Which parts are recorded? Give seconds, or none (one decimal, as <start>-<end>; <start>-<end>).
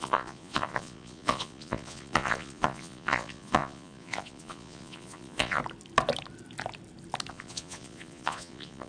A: 5.6-7.3